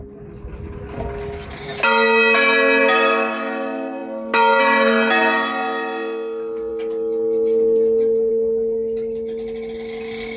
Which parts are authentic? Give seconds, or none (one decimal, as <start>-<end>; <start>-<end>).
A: 0.0-10.4